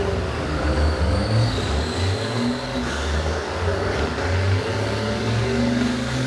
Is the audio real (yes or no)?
no